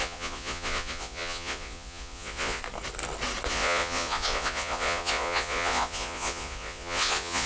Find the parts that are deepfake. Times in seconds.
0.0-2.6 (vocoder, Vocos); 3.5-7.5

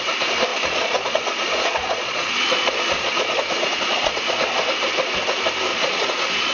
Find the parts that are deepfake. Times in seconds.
0.5-4.4 (vocoder, Vocos); 5.7-6.5

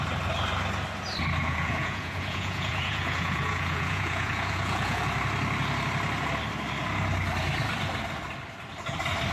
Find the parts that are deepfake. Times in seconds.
1.4-5.0 (vocoder, Vocos)

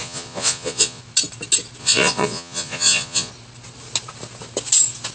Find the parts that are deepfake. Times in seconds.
0.0-1.0 (vocoder, Vocos); 1.8-3.3